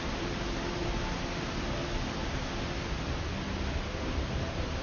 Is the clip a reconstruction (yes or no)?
yes